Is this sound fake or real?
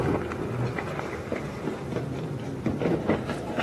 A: real